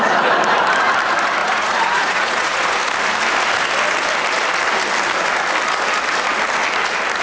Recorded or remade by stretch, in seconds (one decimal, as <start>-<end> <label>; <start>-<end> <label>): 0.0-1.4 recorded; 1.4-2.7 remade; 2.7-7.2 recorded